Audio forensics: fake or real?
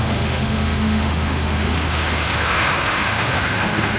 fake